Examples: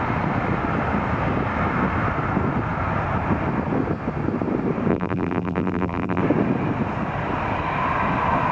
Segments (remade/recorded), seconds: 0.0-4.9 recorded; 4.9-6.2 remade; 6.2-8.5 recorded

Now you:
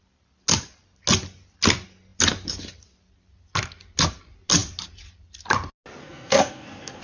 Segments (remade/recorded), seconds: 0.0-6.0 recorded; 6.0-7.0 remade

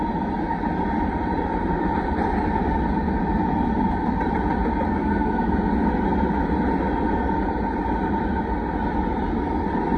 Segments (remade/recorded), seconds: 0.0-4.9 recorded; 4.9-5.5 remade; 5.5-10.0 recorded

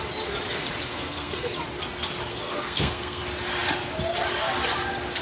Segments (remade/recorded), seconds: 0.0-0.9 recorded; 0.9-1.5 remade; 1.5-2.3 recorded; 2.3-3.2 remade; 3.2-5.2 recorded

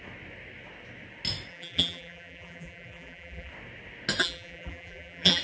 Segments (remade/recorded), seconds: 0.0-1.5 recorded; 1.5-3.5 remade; 3.5-4.2 recorded; 4.2-5.4 remade

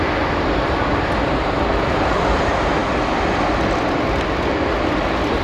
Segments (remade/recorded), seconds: 0.0-5.4 recorded

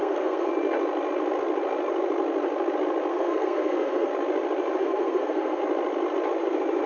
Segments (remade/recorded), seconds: 0.0-0.5 remade; 0.5-3.1 recorded; 3.1-4.1 remade; 4.1-4.8 recorded; 4.8-5.6 remade; 5.6-6.9 recorded

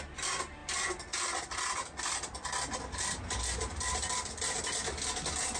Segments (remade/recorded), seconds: 0.0-5.6 recorded